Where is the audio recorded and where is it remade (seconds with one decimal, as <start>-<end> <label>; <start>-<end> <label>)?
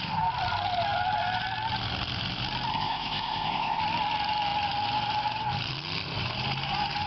0.0-2.7 recorded; 2.7-3.8 remade; 3.8-7.1 recorded